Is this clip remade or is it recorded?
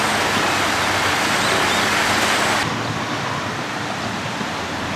recorded